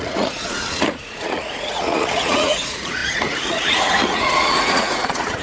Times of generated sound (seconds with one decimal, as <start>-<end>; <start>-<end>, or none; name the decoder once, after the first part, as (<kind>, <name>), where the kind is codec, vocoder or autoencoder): 0.0-5.4 (vocoder, Vocos)